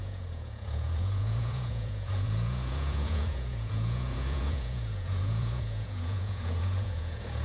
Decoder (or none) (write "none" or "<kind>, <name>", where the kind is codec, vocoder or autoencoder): vocoder, Vocos